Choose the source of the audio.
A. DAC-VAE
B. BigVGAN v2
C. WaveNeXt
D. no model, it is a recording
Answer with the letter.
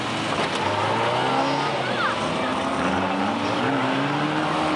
D